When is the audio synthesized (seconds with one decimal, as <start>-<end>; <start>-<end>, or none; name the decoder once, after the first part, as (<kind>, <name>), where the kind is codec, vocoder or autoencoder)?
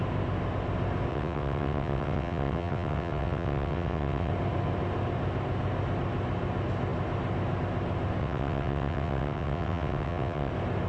1.1-4.3 (vocoder, WaveNeXt); 8.2-10.5